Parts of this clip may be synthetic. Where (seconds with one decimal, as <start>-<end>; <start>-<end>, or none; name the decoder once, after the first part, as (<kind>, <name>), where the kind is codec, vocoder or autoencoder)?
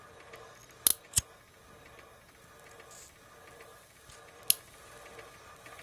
none